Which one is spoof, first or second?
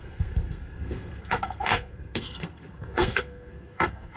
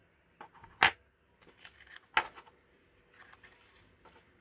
first